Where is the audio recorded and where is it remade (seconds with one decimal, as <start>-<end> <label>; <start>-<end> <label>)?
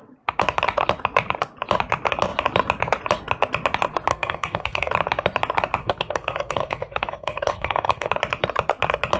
0.0-4.1 recorded; 4.1-4.9 remade; 4.9-5.8 recorded; 5.8-8.1 remade; 8.1-9.2 recorded